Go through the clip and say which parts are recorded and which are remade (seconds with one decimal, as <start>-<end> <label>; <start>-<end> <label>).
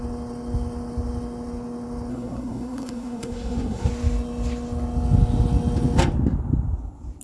0.0-2.1 recorded; 2.1-3.9 remade; 3.9-7.2 recorded